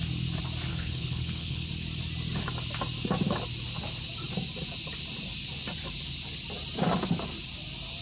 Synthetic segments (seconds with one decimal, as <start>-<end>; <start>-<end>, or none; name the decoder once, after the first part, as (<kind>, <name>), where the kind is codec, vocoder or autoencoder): 0.7-1.7 (codec, HILCodec)